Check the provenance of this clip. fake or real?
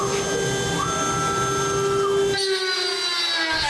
real